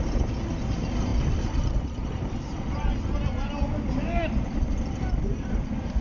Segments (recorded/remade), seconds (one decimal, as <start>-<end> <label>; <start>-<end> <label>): 0.0-6.0 recorded